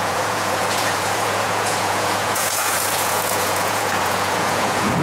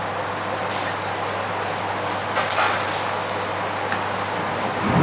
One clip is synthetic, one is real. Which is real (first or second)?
second